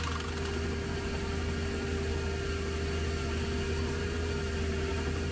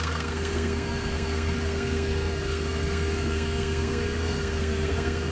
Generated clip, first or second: second